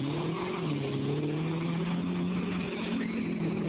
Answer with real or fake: real